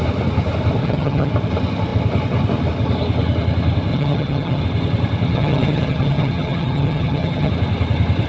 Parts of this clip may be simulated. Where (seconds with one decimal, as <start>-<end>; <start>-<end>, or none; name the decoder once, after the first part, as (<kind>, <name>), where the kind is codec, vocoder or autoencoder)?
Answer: 0.8-1.3 (vocoder, HiFi-GAN); 3.9-4.6; 5.3-7.5